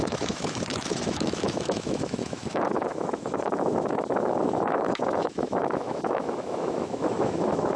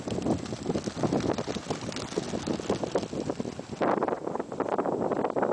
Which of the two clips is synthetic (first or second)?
first